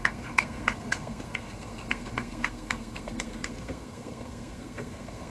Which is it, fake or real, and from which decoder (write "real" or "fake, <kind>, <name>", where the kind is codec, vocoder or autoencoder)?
fake, codec, SNAC